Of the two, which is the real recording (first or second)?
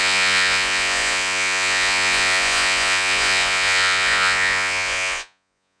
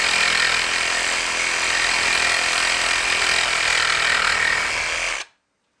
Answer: second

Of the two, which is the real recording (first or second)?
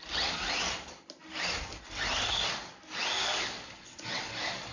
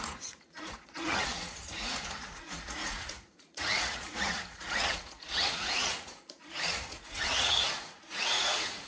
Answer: first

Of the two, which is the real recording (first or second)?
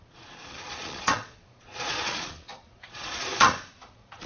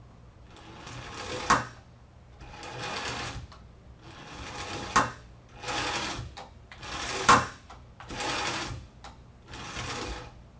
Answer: second